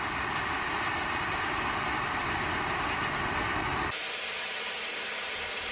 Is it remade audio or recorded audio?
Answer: recorded